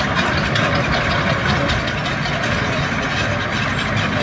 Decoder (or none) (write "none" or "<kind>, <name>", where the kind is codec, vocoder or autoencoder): none